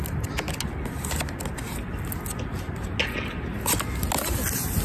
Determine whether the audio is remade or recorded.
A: recorded